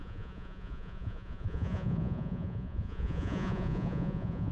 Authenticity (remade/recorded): remade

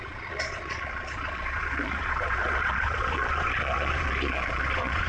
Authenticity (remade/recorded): remade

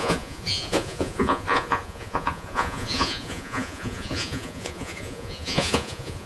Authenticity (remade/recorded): remade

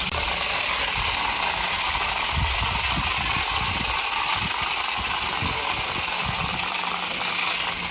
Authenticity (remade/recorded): recorded